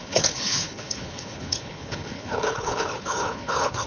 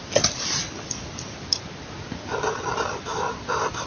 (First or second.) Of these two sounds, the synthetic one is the first